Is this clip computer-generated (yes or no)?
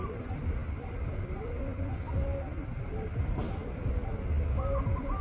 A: no